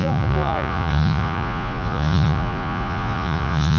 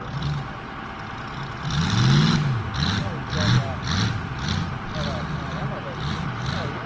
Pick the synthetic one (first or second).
first